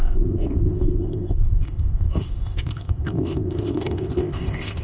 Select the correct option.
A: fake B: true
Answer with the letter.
A